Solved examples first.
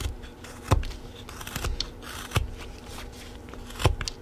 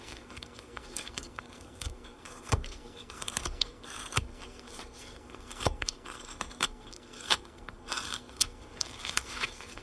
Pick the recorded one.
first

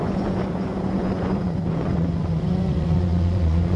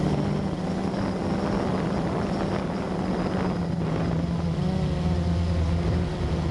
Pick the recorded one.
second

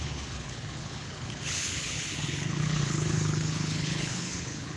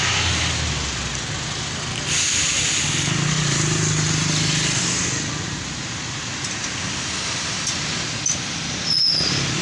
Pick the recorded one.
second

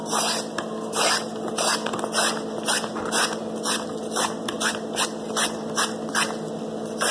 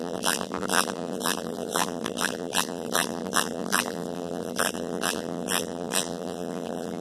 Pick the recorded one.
first